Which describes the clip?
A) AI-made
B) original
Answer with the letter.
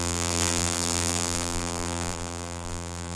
A